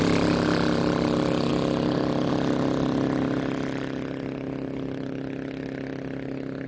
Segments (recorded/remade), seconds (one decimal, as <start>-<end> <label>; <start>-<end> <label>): 0.0-6.7 recorded